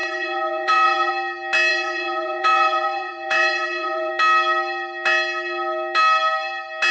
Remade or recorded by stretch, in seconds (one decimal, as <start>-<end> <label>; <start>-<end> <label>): 0.0-1.1 remade; 1.1-1.7 recorded; 1.7-4.1 remade; 4.1-6.9 recorded